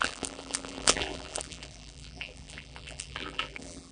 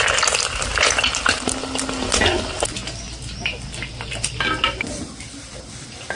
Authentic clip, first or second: second